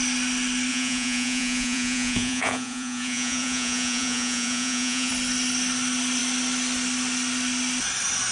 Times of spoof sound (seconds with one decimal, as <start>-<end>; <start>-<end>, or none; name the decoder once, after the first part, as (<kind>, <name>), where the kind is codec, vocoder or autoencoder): 0.7-5.1 (vocoder, Vocos)